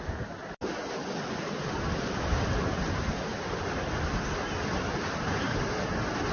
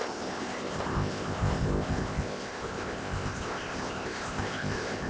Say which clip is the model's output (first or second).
second